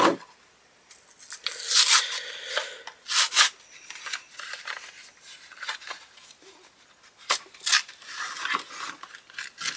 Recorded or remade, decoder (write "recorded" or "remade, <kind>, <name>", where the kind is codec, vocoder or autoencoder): recorded